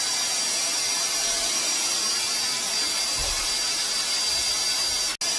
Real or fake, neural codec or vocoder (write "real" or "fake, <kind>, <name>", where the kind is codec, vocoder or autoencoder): real